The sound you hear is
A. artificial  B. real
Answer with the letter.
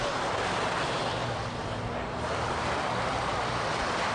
B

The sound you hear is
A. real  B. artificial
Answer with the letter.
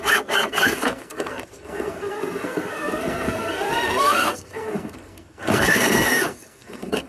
B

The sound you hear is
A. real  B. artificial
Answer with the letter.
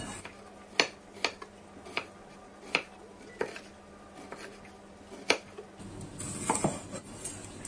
A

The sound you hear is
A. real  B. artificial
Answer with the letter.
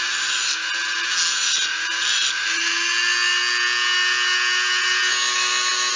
A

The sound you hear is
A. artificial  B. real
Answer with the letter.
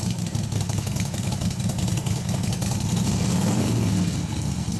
A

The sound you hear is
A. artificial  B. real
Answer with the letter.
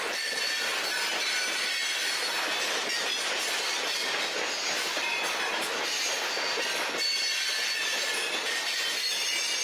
B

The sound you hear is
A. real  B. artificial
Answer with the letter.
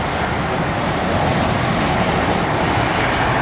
A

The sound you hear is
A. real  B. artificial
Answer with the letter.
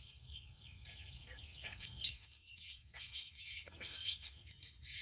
B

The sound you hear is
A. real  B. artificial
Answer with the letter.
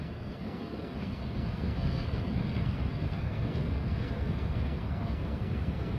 B